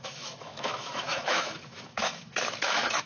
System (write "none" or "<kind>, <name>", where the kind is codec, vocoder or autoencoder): autoencoder, DAC-VAE